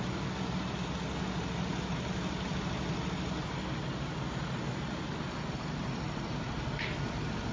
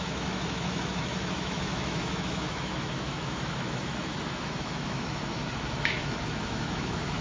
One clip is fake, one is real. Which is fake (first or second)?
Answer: second